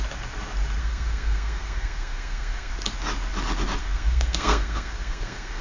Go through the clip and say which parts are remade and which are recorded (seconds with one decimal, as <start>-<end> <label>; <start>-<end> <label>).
0.0-0.8 recorded; 0.8-2.7 remade; 2.7-3.8 recorded; 3.8-5.6 remade